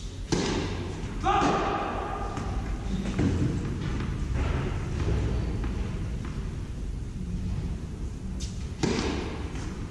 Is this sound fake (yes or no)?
no